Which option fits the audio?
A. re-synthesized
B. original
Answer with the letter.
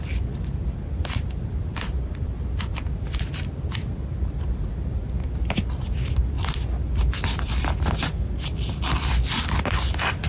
A